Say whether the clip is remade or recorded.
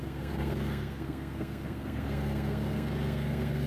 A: remade